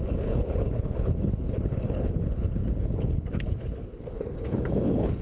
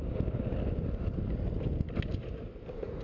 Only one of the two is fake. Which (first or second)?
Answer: first